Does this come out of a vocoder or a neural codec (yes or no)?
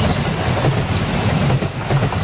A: no